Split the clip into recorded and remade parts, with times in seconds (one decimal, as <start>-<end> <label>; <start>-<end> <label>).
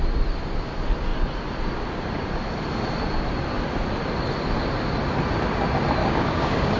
0.0-6.0 recorded; 6.0-6.8 remade